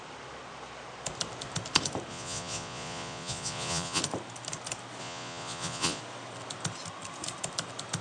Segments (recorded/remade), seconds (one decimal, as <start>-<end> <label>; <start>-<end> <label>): 0.0-2.1 recorded; 2.1-4.0 remade; 4.0-5.0 recorded; 5.0-6.0 remade; 6.0-8.0 recorded